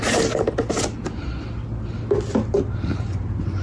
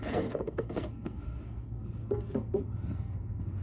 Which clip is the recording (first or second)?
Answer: first